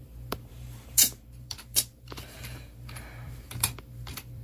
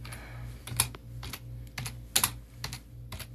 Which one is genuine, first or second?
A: second